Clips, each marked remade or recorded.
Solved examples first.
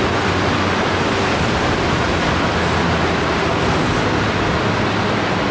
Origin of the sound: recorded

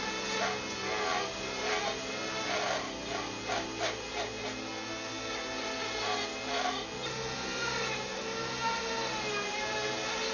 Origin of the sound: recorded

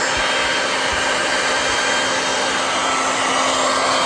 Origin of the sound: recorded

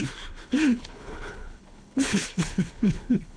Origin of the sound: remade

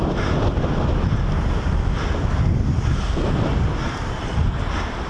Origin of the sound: recorded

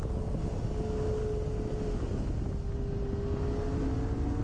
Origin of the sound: recorded